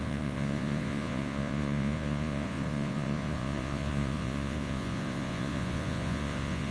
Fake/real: fake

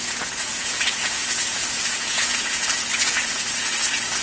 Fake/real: fake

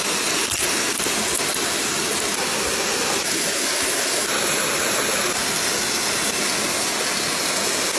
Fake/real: real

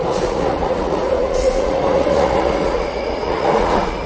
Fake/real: fake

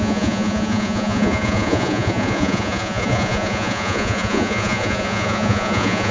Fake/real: fake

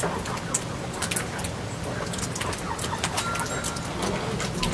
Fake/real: real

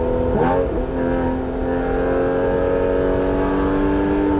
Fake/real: real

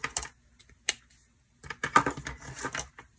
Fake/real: real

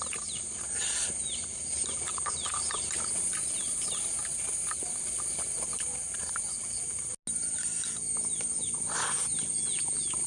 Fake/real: real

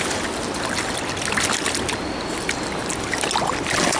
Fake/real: real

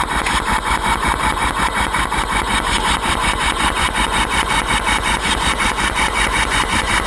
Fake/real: fake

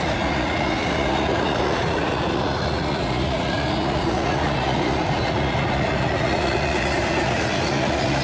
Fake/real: fake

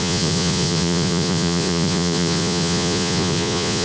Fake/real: fake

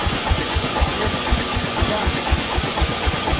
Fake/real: fake